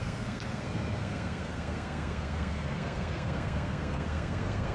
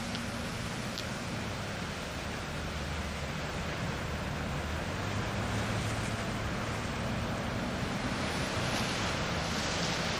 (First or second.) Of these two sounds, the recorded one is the second